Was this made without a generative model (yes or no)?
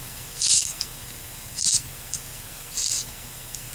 no